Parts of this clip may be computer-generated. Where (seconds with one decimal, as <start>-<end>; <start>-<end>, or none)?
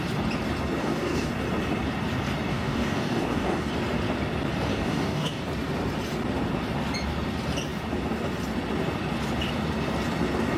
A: 0.8-1.3; 2.5-3.7; 4.7-5.4